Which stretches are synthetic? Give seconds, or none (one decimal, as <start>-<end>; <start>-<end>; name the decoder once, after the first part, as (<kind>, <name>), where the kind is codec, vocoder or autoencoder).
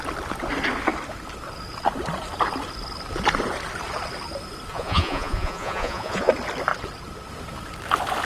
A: 4.7-6.3 (vocoder, Vocos)